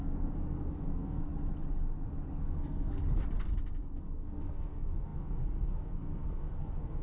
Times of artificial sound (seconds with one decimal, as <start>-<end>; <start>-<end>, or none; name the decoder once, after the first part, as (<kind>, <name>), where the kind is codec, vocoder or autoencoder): 0.0-1.3 (codec, SNAC); 2.4-3.0; 3.8-7.0